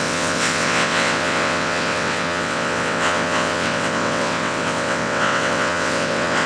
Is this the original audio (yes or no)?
no